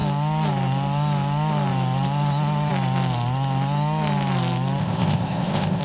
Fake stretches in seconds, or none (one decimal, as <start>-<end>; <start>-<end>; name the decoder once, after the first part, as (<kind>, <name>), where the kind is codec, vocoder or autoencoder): 4.8-5.8 (codec, ZipCodec)